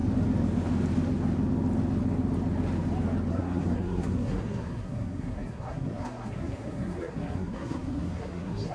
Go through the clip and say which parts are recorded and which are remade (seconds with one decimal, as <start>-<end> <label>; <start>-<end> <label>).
0.0-3.3 recorded; 3.3-8.7 remade